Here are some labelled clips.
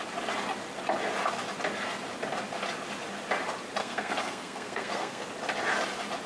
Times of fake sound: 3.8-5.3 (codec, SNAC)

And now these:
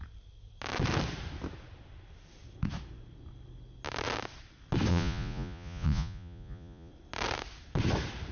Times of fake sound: 4.9-6.9 (vocoder, Vocos)

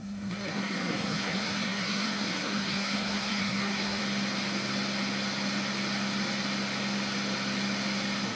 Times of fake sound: 0.0-4.0 (codec, SNAC)

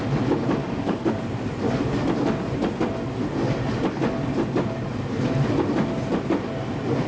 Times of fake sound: 0.6-1.2 (codec, DAC)

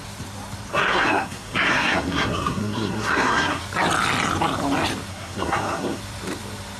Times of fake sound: 0.7-3.6 (codec, SNAC); 5.1-6.0

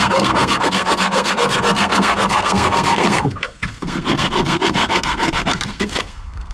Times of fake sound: 0.0-6.5 (codec, SNAC)

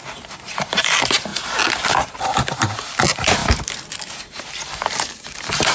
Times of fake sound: 0.0-1.3 (vocoder, BigVGAN v2); 2.2-3.4; 4.1-5.7